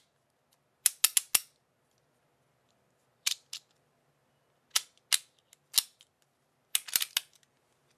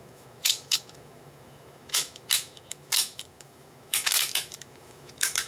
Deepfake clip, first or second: second